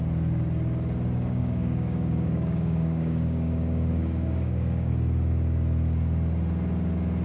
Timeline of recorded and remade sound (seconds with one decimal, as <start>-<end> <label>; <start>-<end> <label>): 0.0-1.4 recorded; 1.4-4.9 remade; 4.9-7.2 recorded